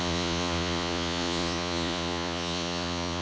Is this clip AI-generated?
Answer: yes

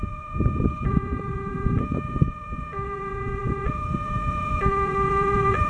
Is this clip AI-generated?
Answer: yes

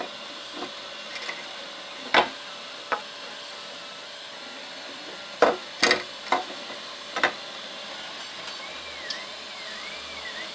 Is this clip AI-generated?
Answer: no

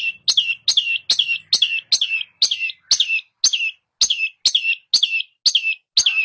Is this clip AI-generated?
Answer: no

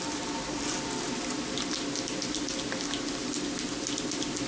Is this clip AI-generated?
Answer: no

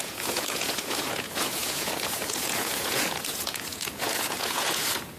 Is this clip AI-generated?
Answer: yes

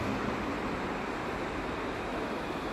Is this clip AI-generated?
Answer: no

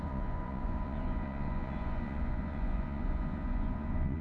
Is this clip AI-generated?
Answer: yes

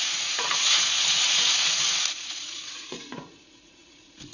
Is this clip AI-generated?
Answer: yes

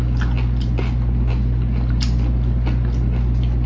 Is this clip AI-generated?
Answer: no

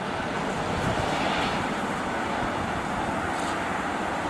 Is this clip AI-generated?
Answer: no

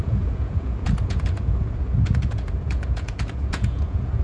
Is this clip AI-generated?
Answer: yes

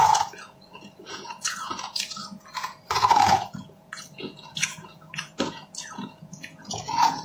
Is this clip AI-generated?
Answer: yes